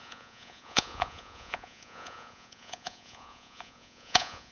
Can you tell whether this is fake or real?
fake